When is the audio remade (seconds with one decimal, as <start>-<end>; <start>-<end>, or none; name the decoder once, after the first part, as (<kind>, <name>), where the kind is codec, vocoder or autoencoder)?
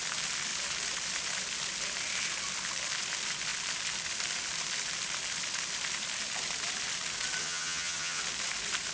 7.4-8.2 (vocoder, HiFi-GAN)